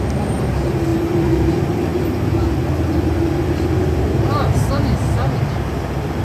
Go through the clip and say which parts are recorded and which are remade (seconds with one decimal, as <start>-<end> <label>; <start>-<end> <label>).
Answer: 0.0-6.2 recorded